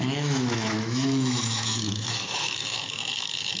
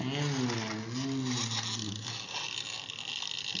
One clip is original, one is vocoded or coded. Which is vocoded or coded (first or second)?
first